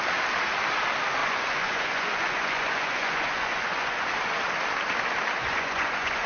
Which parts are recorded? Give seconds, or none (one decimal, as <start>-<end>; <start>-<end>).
0.0-1.2; 4.1-5.4